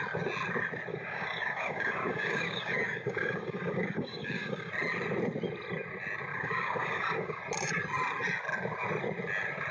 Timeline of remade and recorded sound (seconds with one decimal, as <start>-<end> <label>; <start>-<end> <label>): 0.0-0.9 recorded; 0.9-4.7 remade; 4.7-6.3 recorded; 6.3-7.4 remade; 7.4-9.7 recorded